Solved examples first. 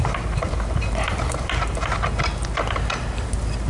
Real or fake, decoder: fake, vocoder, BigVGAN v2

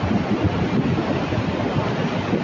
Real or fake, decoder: real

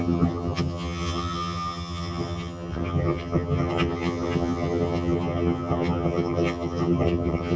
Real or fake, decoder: fake, vocoder, HiFi-GAN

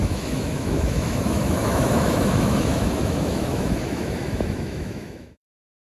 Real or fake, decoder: fake, autoencoder, DAC-VAE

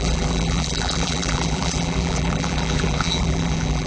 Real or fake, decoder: fake, vocoder, BigVGAN v2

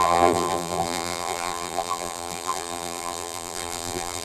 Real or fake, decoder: fake, vocoder, BigVGAN v2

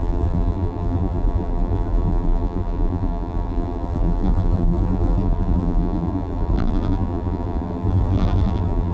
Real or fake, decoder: fake, vocoder, BigVGAN v2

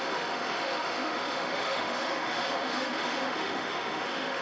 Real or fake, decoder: fake, autoencoder, DAC-VAE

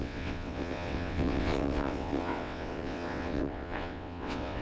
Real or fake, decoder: fake, vocoder, WaveNeXt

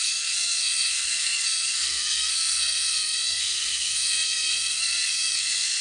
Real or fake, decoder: fake, codec, SNAC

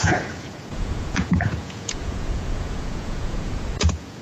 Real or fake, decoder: fake, vocoder, Vocos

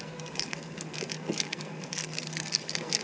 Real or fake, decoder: fake, codec, SNAC